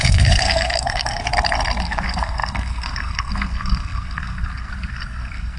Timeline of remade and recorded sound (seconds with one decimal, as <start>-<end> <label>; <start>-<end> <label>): 0.0-1.2 remade; 1.2-1.8 recorded; 1.8-5.6 remade